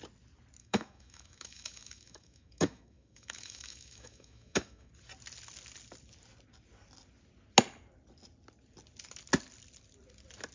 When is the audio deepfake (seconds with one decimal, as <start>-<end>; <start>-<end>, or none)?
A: 0.6-4.9